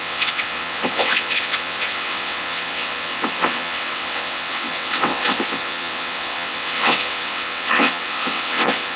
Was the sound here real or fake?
fake